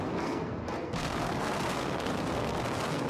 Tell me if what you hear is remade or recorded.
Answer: remade